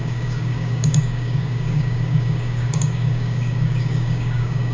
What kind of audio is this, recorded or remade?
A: remade